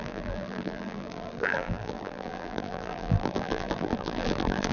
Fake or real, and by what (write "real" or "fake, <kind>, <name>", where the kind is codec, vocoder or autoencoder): fake, vocoder, BigVGAN v2